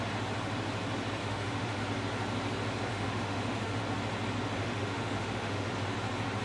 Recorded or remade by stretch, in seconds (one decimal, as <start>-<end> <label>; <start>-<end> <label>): 0.0-1.2 recorded; 1.2-1.8 remade; 1.8-2.9 recorded; 2.9-3.8 remade; 3.8-4.6 recorded; 4.6-5.7 remade; 5.7-6.4 recorded